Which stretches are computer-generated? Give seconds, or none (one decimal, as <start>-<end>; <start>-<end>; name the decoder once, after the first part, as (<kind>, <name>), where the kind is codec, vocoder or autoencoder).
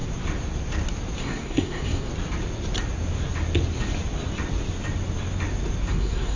1.2-2.1 (codec, SNAC); 5.9-6.4